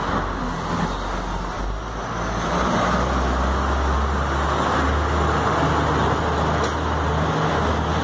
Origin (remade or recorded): recorded